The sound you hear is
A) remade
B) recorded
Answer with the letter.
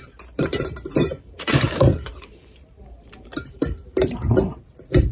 A